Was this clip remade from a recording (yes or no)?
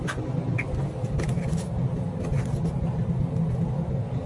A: no